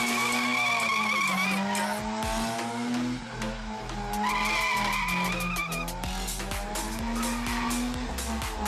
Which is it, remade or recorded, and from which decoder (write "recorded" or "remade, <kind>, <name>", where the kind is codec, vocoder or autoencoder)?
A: recorded